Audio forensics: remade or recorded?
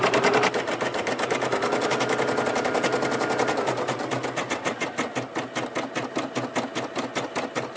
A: recorded